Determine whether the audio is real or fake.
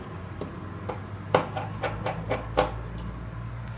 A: real